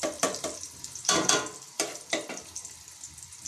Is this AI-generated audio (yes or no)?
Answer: yes